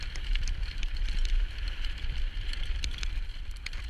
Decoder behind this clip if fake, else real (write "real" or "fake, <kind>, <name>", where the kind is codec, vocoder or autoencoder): fake, vocoder, BigVGAN v2